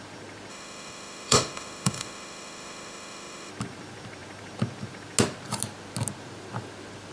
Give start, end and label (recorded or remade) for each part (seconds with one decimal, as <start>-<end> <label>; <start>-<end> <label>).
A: 0.0-0.5 recorded; 0.5-3.5 remade; 3.5-7.1 recorded